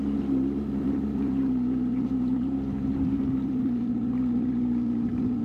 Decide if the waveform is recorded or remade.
remade